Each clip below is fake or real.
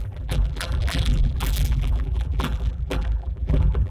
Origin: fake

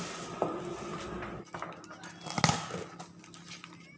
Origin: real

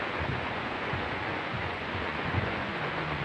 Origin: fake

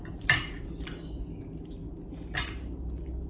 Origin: real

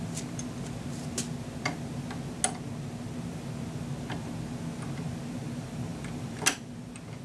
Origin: real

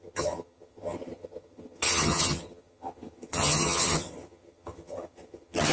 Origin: fake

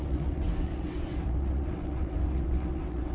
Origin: fake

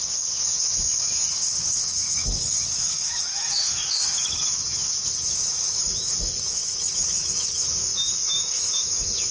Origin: fake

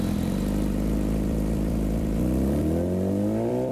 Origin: fake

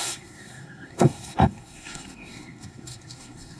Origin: fake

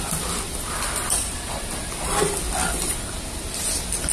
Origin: real